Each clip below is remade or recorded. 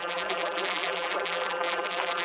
remade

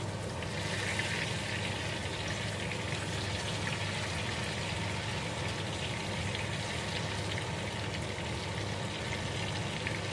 recorded